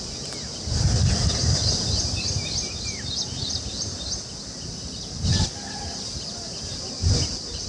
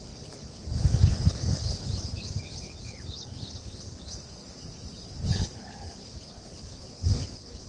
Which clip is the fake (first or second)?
second